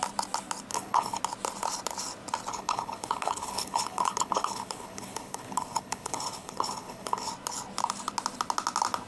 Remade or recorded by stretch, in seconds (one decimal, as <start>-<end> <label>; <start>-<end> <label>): 0.0-0.7 recorded; 0.7-1.2 remade; 1.2-2.5 recorded; 2.5-7.3 remade; 7.3-9.1 recorded